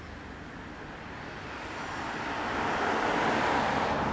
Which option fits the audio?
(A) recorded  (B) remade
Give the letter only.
A